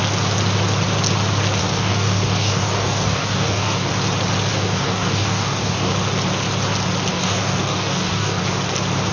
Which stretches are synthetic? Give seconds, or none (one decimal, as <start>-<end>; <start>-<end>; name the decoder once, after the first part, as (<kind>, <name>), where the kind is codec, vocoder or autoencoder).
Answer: 1.6-3.9 (codec, DAC); 4.5-5.9; 7.1-8.4